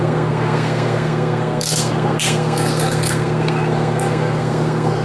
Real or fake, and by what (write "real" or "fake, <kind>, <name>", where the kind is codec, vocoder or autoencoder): fake, codec, SNAC